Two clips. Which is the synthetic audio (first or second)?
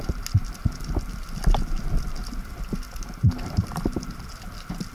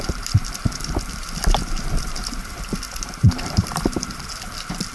second